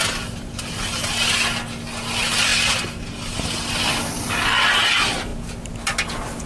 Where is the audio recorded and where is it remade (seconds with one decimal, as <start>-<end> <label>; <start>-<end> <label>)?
0.0-6.5 recorded